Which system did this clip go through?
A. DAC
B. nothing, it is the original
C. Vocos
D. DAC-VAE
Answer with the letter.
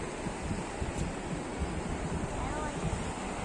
B